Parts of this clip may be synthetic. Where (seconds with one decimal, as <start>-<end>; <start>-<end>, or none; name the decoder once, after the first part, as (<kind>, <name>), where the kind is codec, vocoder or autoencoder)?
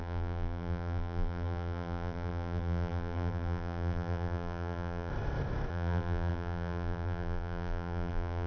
0.0-5.1 (vocoder, BigVGAN v2); 5.7-8.5